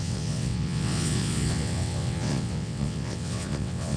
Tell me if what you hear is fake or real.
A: fake